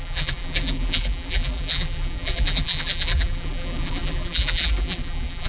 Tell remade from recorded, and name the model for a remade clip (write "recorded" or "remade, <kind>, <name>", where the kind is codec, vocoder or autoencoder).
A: remade, vocoder, BigVGAN v2